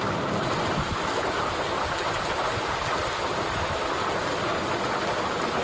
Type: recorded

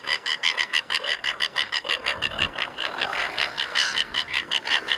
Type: remade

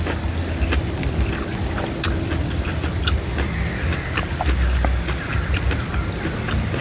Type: recorded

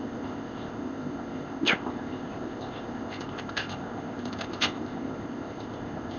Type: remade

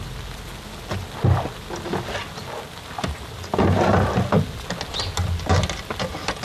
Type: recorded